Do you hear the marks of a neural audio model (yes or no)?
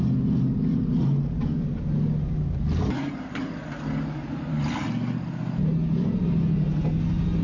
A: no